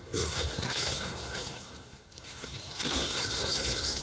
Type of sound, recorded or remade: remade